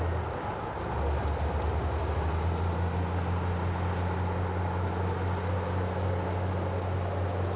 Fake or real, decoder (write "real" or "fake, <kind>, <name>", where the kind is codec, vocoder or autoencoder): real